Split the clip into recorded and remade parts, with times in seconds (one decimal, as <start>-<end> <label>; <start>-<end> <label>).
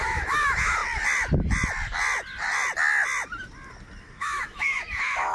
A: 0.0-0.8 remade; 0.8-4.0 recorded; 4.0-5.3 remade